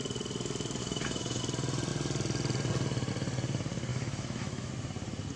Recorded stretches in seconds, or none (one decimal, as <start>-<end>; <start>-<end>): 0.0-0.8; 1.4-3.9; 4.7-5.4